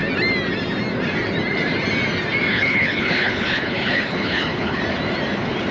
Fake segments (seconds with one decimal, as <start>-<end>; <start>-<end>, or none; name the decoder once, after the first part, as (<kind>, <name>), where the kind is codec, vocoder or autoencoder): 2.5-4.8 (codec, HILCodec)